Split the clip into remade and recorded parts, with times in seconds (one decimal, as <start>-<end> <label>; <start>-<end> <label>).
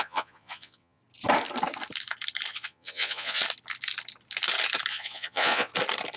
0.0-1.0 remade; 1.0-2.5 recorded; 2.5-3.4 remade; 3.4-4.9 recorded; 4.9-5.7 remade; 5.7-6.2 recorded